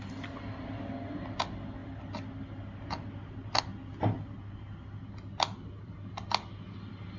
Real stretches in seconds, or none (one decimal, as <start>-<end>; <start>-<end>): 0.0-7.2